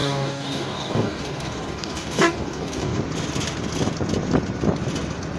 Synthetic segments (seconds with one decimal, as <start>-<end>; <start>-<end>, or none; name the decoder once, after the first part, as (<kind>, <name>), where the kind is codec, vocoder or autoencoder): 0.0-3.0 (codec, DAC)